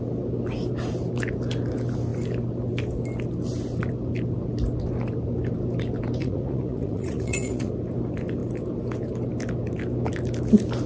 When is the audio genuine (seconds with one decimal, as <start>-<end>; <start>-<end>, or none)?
0.0-6.2; 7.7-10.9